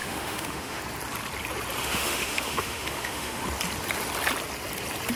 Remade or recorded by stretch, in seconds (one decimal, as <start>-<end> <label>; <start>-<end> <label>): 0.0-0.8 remade; 0.8-1.8 recorded; 1.8-3.4 remade; 3.4-5.2 recorded